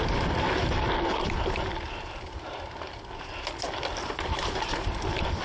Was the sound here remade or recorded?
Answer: recorded